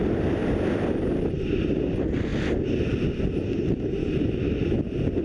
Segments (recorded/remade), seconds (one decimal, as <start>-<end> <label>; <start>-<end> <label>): 0.0-0.4 remade; 0.4-1.7 recorded; 1.7-2.3 remade; 2.3-3.5 recorded; 3.5-5.2 remade